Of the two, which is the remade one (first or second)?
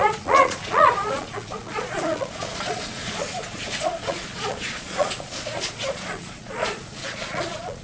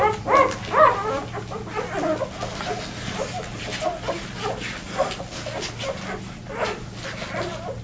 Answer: first